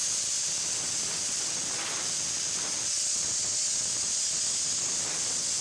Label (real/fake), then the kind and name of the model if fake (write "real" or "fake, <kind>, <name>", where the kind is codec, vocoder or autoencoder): real